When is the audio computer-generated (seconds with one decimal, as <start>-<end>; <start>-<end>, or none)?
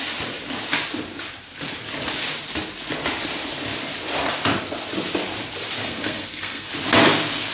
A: 5.8-6.7